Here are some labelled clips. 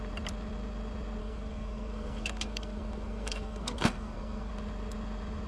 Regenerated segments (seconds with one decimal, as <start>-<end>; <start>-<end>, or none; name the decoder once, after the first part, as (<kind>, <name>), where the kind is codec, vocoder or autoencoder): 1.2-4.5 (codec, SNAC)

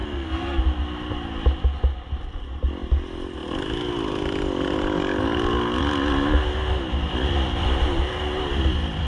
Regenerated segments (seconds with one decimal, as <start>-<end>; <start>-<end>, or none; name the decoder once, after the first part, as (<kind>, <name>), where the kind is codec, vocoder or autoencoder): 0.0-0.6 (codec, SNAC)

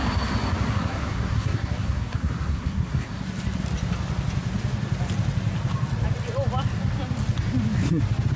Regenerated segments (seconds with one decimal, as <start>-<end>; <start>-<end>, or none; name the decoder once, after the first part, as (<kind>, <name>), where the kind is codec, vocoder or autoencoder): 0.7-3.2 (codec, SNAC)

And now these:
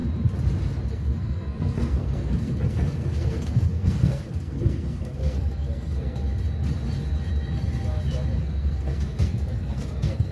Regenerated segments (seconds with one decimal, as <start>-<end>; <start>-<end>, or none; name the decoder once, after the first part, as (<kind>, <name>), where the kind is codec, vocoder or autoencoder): 0.9-6.2 (codec, SNAC); 8.4-10.3

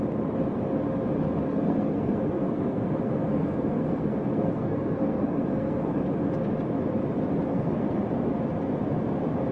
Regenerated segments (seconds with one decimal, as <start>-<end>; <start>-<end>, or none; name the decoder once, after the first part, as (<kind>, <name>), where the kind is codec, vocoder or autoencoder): 1.5-6.0 (codec, SNAC); 7.5-8.0

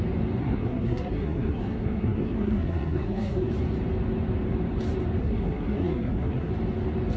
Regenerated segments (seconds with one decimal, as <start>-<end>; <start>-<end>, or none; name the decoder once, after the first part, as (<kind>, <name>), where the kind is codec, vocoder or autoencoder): 0.4-3.5 (codec, SNAC); 5.2-6.5

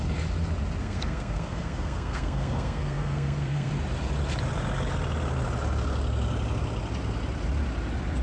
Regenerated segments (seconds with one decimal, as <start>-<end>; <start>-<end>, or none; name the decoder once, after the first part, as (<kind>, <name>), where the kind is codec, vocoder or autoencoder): 0.8-3.7 (codec, SNAC)

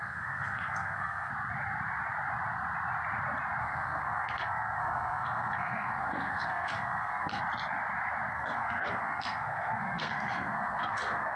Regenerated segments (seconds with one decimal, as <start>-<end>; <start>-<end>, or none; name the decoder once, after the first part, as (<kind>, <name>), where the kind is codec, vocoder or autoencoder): 0.0-1.3 (codec, SNAC); 3.6-7.4; 8.3-11.4